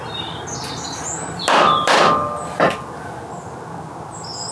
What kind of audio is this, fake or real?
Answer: real